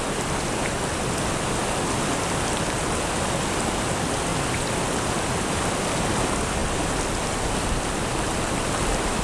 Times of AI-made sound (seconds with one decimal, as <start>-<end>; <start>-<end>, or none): none